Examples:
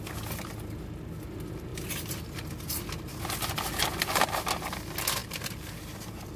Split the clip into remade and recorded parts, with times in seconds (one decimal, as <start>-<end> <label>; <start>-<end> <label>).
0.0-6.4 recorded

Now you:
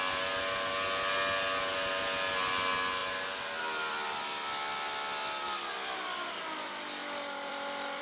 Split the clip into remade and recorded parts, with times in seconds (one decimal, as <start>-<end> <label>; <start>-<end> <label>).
0.0-7.0 recorded; 7.0-8.0 remade

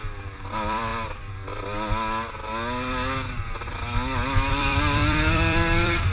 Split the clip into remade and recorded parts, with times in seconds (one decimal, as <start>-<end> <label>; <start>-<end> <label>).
0.0-0.9 remade; 0.9-4.5 recorded; 4.5-6.1 remade